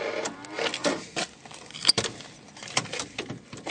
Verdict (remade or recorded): recorded